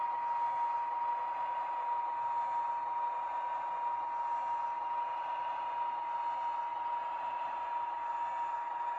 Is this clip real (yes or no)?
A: yes